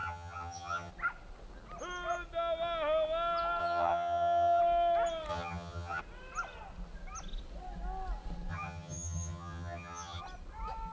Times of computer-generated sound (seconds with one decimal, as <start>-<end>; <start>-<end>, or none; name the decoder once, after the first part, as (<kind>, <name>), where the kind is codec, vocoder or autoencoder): 0.0-0.9 (vocoder, HiFi-GAN); 3.6-4.6; 5.3-6.0; 8.5-10.2

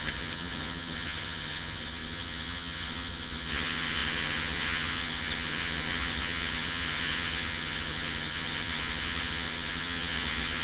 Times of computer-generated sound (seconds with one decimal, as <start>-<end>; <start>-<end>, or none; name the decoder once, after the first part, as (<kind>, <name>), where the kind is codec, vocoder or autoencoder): 0.0-10.6 (vocoder, HiFi-GAN)

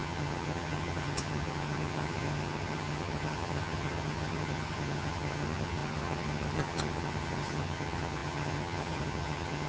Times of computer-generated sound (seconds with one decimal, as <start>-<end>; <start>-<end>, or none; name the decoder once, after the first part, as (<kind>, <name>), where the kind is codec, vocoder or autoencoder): 0.0-9.7 (vocoder, HiFi-GAN)

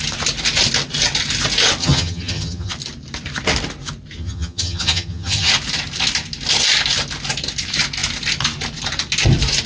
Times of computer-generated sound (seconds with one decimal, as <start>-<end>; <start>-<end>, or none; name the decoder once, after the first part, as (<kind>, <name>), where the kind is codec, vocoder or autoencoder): 1.8-2.7 (vocoder, HiFi-GAN); 4.2-5.5

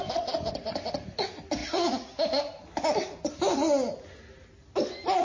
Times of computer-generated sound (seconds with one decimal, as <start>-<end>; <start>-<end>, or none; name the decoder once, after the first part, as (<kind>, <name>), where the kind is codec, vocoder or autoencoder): none

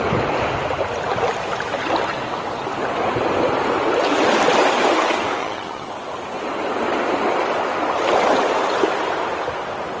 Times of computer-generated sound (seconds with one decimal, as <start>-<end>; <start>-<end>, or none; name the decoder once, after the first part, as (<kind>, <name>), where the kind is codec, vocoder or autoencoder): 5.4-5.9 (vocoder, HiFi-GAN)

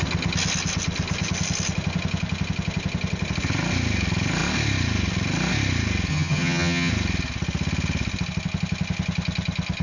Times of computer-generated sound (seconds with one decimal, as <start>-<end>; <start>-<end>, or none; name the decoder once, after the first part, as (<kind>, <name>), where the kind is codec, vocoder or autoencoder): 6.1-6.9 (vocoder, HiFi-GAN)